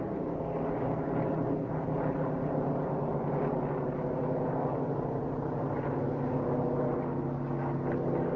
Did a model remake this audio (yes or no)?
no